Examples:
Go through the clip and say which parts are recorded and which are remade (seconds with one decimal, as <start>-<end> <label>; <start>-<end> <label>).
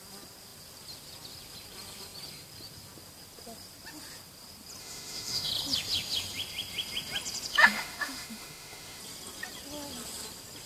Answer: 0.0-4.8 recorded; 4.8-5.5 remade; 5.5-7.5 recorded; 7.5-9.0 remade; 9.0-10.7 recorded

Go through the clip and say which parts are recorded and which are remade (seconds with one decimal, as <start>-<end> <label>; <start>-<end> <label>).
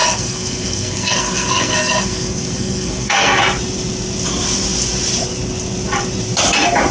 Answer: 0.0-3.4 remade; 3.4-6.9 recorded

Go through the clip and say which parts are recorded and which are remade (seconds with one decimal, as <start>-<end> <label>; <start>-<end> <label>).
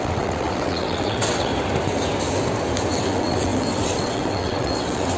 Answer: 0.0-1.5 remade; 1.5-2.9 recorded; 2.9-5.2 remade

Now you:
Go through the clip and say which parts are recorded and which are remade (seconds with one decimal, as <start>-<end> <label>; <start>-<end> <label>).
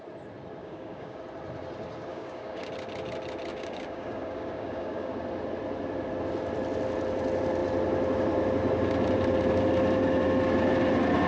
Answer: 0.0-0.6 recorded; 0.6-1.2 remade; 1.2-2.1 recorded; 2.1-2.7 remade; 2.7-3.5 recorded; 3.5-5.1 remade; 5.1-11.3 recorded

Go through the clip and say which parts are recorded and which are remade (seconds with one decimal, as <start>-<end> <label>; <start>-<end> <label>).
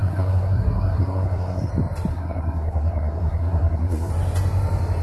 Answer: 0.0-1.7 remade; 1.7-2.1 recorded; 2.1-4.1 remade; 4.1-5.0 recorded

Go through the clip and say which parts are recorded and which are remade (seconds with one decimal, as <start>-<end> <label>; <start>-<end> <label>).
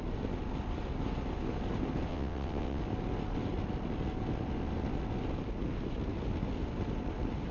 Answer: 0.0-2.1 recorded; 2.1-2.8 remade; 2.8-7.5 recorded